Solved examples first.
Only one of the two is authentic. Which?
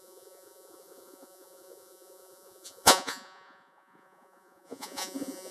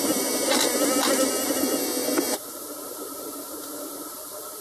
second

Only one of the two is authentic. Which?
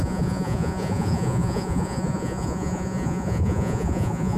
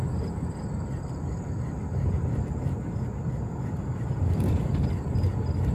second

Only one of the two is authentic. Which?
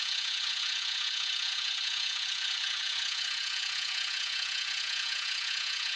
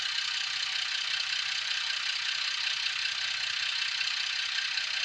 second